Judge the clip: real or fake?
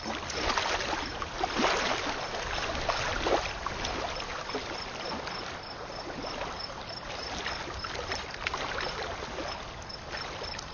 real